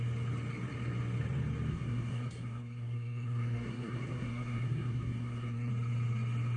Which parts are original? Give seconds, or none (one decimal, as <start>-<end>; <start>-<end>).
0.0-1.7; 5.7-6.6